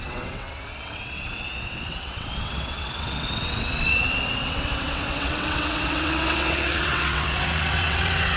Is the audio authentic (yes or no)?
no